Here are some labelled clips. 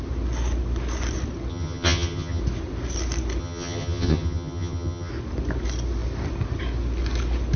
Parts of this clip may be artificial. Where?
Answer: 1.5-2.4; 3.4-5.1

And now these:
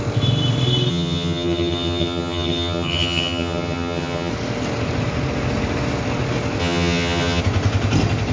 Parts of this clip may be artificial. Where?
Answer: 0.9-4.3; 6.6-7.4